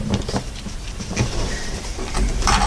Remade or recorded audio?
remade